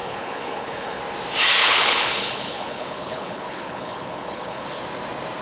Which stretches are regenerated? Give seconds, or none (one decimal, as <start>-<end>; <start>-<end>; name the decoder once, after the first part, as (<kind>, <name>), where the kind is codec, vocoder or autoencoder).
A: 0.0-1.0 (codec, HILCodec); 1.6-4.8